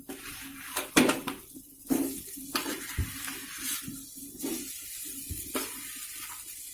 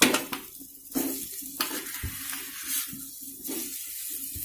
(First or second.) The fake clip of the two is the first